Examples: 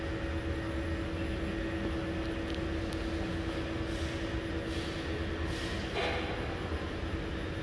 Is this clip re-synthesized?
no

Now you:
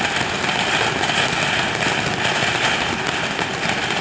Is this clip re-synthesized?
no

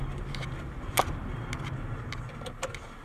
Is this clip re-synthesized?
no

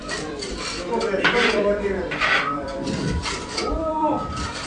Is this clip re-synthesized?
yes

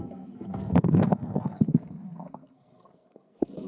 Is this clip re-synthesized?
yes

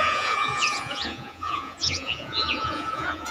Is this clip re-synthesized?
yes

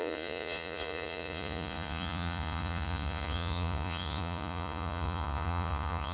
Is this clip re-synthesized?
yes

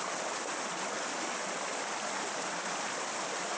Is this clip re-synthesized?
no